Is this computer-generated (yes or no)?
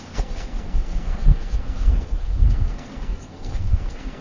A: yes